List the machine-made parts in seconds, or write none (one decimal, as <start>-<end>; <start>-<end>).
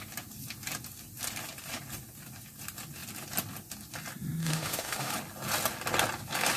4.4-5.1